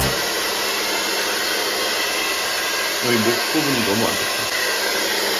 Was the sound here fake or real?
real